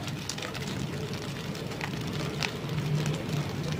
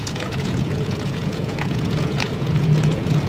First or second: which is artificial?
second